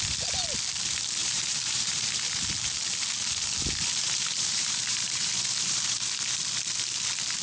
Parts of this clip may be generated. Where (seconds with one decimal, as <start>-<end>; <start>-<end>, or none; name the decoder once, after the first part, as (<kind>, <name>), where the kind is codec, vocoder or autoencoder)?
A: 1.2-2.2 (vocoder, BigVGAN v2); 3.9-6.0

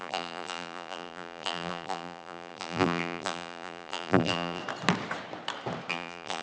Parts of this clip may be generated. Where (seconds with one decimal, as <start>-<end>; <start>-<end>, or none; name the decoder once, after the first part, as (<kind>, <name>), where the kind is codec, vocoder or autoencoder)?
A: 0.0-4.6 (vocoder, BigVGAN v2); 5.9-6.4

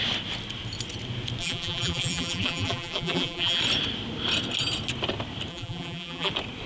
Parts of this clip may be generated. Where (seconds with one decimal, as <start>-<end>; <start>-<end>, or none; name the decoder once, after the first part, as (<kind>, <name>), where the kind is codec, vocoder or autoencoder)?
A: 1.4-3.6 (vocoder, BigVGAN v2); 5.5-6.3

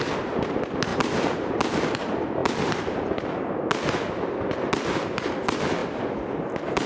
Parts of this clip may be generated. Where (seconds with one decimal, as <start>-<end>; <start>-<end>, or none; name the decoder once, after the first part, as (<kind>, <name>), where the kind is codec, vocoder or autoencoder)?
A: 0.9-1.5 (vocoder, BigVGAN v2); 5.8-6.5

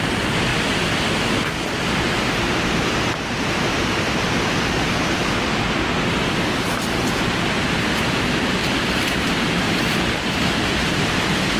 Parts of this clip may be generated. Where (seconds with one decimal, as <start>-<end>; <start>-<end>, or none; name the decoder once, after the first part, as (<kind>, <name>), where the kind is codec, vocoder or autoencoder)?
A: 0.0-0.5 (vocoder, BigVGAN v2); 1.7-5.2; 6.1-11.6